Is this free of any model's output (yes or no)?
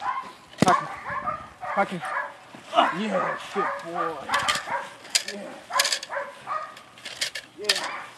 yes